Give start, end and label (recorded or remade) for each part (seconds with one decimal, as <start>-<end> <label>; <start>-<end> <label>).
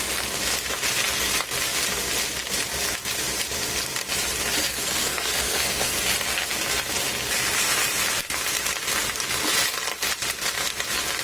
0.0-4.6 recorded; 4.6-6.0 remade; 6.0-11.2 recorded